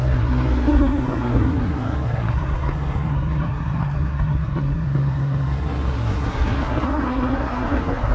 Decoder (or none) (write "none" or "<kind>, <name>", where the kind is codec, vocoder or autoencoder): codec, SNAC